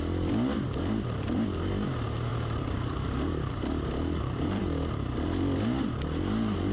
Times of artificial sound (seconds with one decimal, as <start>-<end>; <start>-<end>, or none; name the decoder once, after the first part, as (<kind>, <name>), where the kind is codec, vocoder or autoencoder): 2.3-4.6 (vocoder, BigVGAN v2)